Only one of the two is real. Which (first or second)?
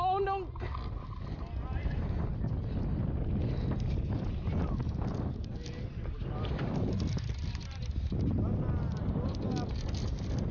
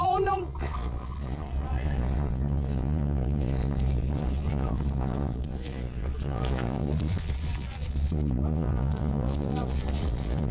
first